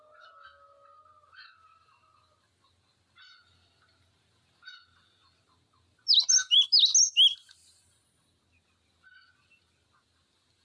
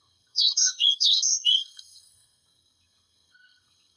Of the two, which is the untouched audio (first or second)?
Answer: first